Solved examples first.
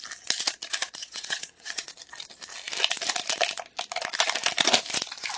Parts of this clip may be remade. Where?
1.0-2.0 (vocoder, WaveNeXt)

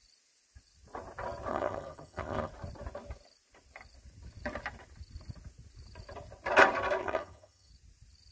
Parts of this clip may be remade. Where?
1.5-2.5 (vocoder, HiFi-GAN); 7.0-7.7

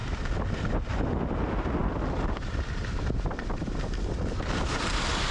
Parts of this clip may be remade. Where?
none

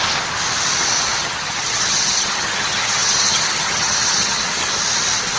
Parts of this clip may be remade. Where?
1.2-4.4 (vocoder, HiFi-GAN)

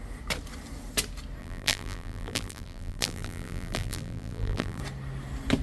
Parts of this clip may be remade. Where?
1.4-4.8 (vocoder, BigVGAN v2)